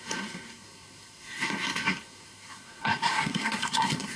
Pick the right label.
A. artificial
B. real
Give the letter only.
A